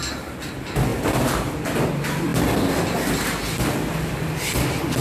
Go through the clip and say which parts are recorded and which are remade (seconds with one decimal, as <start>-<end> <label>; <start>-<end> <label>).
0.0-0.9 recorded; 0.9-1.8 remade; 1.8-5.0 recorded